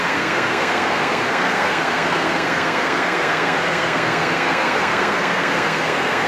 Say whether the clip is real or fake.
fake